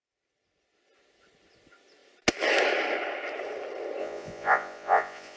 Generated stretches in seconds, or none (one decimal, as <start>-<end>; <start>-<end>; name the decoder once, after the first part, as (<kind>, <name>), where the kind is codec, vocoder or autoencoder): 4.0-5.4 (vocoder, Vocos)